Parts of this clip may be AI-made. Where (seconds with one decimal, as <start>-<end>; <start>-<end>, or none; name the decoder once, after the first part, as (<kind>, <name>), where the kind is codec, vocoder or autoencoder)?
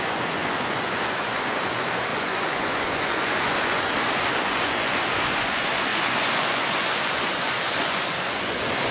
0.0-8.9 (vocoder, Vocos)